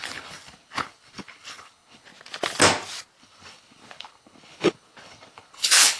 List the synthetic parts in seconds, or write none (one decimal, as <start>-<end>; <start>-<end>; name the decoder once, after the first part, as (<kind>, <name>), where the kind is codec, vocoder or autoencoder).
0.0-2.1 (codec, HILCodec); 3.2-6.0